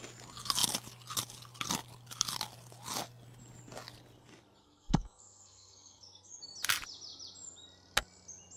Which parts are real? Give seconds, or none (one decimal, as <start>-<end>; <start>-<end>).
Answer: 0.0-4.6; 6.4-8.6